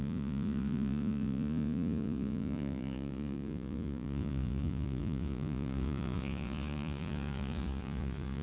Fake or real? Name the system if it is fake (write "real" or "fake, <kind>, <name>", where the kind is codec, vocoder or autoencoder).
fake, vocoder, Vocos